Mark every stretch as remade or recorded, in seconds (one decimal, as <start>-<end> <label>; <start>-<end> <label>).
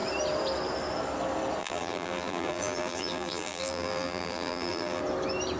0.0-1.6 recorded; 1.6-5.0 remade; 5.0-5.6 recorded